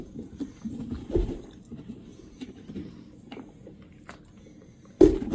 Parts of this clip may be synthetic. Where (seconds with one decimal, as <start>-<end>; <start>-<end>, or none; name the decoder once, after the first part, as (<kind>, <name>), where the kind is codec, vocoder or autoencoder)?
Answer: 2.1-2.9 (vocoder, BigVGAN v2)